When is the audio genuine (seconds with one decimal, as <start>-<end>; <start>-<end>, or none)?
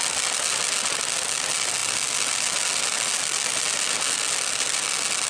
0.0-5.3